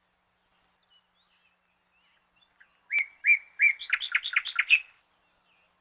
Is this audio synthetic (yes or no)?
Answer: no